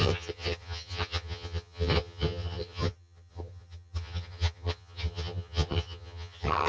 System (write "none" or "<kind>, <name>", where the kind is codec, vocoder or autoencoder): vocoder, HiFi-GAN